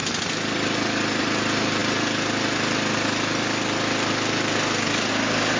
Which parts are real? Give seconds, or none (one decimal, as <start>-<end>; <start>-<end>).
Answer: 0.0-5.6